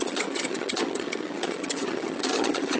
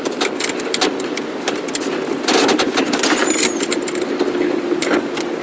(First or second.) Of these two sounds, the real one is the second